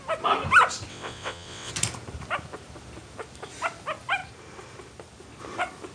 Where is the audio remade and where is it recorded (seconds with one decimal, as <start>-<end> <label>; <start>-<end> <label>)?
0.0-0.9 recorded; 0.9-1.7 remade; 1.7-5.9 recorded